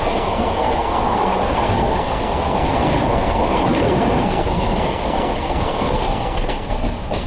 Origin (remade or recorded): remade